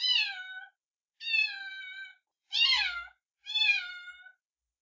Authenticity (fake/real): real